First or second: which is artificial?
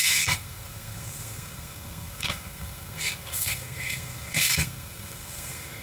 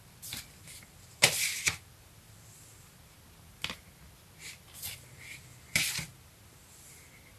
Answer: first